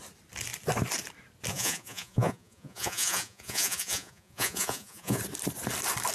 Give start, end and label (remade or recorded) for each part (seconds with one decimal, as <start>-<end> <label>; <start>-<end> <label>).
0.0-1.5 recorded; 1.5-5.2 remade; 5.2-6.1 recorded